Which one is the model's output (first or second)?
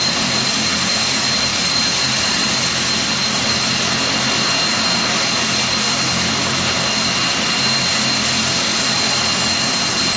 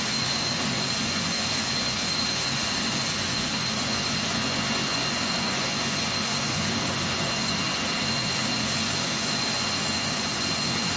second